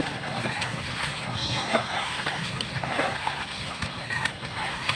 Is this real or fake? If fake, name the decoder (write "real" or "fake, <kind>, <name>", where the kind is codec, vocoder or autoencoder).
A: fake, codec, SNAC